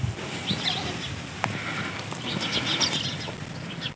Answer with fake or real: real